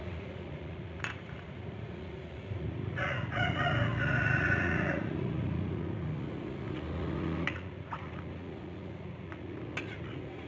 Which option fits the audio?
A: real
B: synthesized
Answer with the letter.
B